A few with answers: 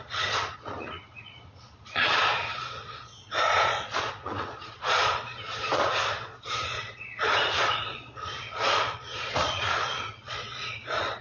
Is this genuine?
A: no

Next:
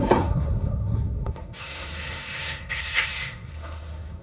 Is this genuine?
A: no